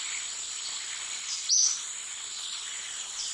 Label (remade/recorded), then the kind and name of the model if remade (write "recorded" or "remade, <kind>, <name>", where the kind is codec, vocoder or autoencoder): recorded